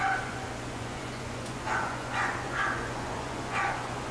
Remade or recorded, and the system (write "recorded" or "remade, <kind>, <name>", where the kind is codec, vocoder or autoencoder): remade, vocoder, Vocos